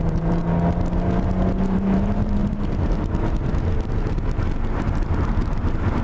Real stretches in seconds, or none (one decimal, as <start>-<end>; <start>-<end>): 0.4-1.6